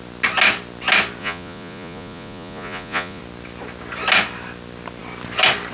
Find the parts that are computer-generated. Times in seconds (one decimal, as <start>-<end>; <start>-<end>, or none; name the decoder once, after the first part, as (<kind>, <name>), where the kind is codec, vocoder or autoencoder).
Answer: 1.2-3.2 (vocoder, Vocos)